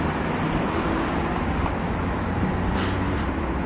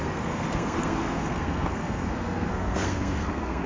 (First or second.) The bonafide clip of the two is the first